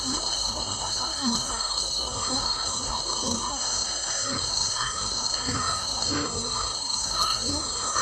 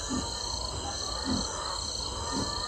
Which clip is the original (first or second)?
second